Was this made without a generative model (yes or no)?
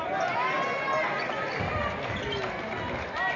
yes